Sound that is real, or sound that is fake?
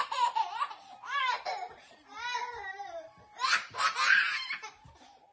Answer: fake